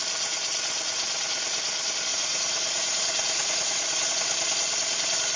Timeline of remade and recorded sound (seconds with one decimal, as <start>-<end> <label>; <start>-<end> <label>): 0.0-2.1 recorded; 2.1-4.1 remade; 4.1-5.4 recorded